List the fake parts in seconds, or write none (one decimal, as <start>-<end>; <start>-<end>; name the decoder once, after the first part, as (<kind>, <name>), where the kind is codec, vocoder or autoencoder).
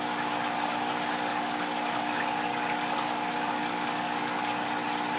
1.3-4.4 (codec, DAC)